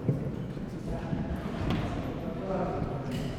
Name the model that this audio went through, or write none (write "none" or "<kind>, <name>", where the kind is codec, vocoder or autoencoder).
vocoder, BigVGAN v2